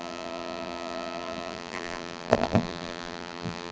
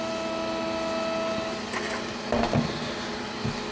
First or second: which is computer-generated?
first